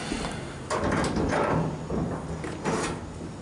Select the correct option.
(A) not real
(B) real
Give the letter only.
B